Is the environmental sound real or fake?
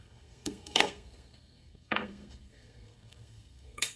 fake